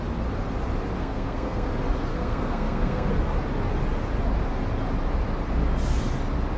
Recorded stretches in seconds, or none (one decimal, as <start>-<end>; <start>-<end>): 0.0-1.0; 1.7-2.1; 3.1-6.6